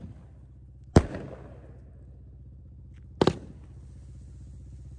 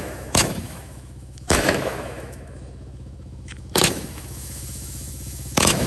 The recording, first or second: first